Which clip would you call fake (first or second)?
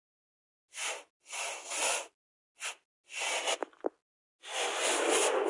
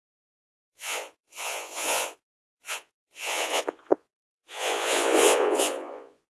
second